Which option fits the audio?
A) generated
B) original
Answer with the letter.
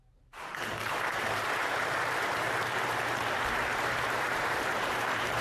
A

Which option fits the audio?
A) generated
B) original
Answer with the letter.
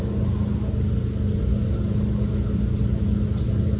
B